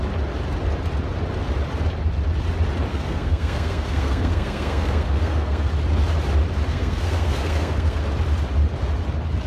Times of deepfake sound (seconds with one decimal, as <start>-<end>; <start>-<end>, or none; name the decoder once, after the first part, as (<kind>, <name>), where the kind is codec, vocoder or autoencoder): 2.9-5.7 (codec, SNAC); 6.7-8.0